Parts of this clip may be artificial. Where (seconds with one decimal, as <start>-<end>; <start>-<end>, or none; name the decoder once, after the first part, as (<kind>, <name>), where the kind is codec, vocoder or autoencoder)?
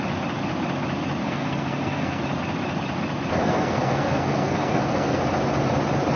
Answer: 1.2-2.2 (codec, SNAC); 3.4-5.2